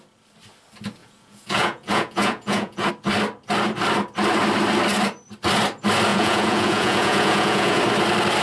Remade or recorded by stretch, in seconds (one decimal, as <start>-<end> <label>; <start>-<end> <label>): 0.0-1.0 recorded; 1.0-2.9 remade; 2.9-6.1 recorded; 6.1-7.8 remade; 7.8-8.4 recorded